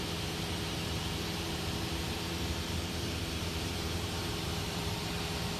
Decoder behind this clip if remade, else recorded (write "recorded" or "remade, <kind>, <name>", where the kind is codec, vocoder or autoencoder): remade, vocoder, BigVGAN v2